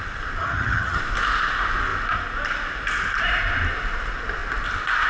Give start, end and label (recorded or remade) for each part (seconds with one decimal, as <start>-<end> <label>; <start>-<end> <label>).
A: 0.0-0.4 recorded; 0.4-1.0 remade; 1.0-5.1 recorded